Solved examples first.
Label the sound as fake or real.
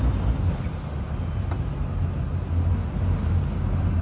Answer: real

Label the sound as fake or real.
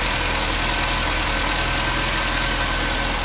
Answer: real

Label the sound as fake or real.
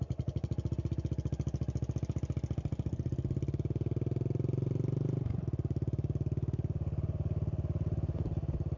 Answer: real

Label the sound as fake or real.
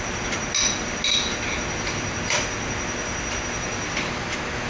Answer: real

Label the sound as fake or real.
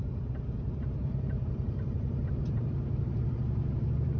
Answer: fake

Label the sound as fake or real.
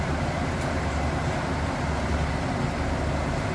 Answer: real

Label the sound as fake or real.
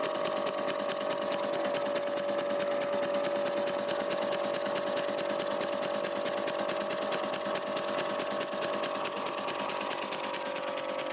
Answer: real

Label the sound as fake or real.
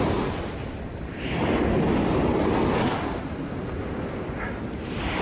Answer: real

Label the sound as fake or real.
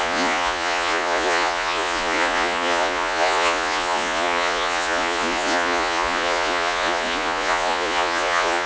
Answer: fake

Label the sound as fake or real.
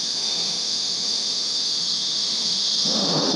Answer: fake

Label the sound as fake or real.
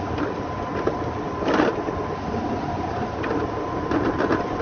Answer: real